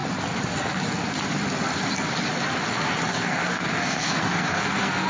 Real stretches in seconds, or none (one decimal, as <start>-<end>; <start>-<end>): 0.0-3.1